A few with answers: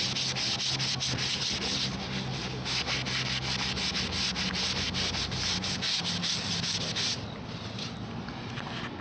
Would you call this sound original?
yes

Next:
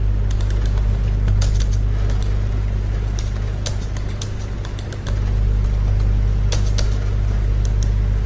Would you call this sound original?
yes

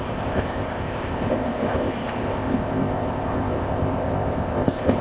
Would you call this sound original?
no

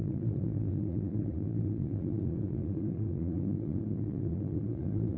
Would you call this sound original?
no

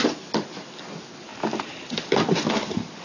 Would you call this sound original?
yes